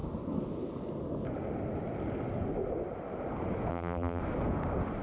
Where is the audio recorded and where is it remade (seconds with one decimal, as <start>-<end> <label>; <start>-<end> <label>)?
0.0-3.7 recorded; 3.7-4.2 remade; 4.2-5.0 recorded